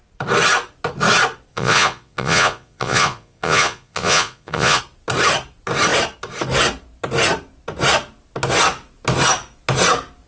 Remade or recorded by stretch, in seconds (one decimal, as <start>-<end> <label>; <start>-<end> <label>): 0.0-1.5 recorded; 1.5-4.8 remade; 4.8-10.3 recorded